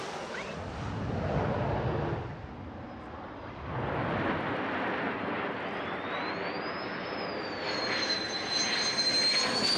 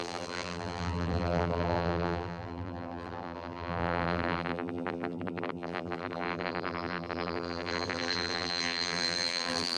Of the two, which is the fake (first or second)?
second